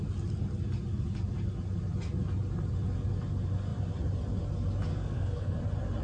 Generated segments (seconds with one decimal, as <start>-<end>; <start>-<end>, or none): 4.9-5.6